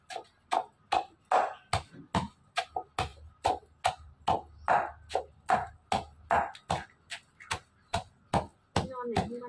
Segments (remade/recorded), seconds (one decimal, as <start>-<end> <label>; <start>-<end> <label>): 0.0-9.5 recorded